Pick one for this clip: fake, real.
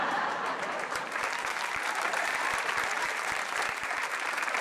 fake